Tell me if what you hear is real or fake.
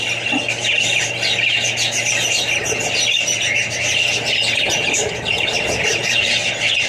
real